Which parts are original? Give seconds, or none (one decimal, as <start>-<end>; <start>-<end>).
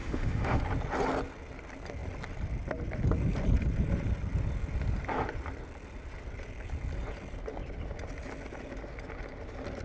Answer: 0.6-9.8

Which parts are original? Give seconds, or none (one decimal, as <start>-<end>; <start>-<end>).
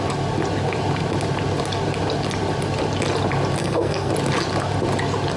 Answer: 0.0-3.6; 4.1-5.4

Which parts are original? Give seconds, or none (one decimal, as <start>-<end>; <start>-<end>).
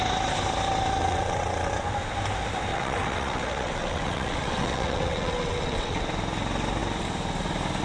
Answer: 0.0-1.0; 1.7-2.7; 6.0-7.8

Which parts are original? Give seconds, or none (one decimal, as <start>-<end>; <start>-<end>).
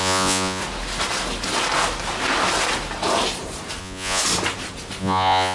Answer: 0.6-3.8; 4.2-5.0